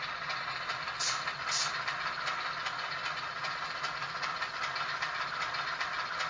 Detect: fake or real real